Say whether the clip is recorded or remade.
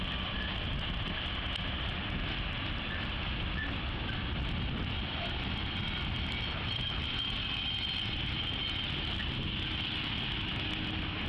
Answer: recorded